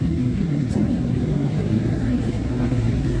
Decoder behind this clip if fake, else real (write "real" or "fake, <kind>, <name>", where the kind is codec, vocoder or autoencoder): fake, codec, SNAC